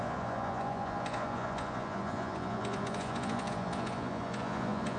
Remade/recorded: remade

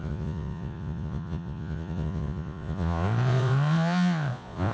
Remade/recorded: remade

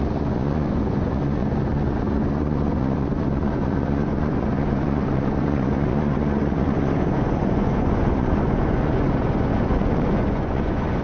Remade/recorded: remade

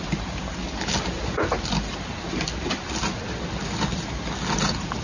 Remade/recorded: recorded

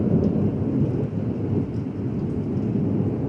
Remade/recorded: recorded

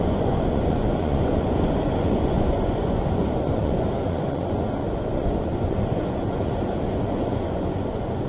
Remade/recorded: remade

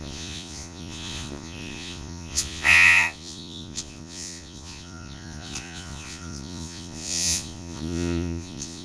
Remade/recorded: remade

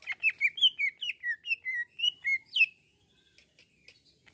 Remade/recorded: recorded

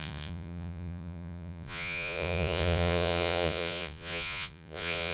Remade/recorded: remade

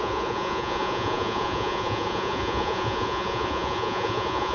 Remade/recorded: remade